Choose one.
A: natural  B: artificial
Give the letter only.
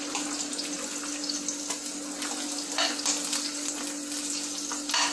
A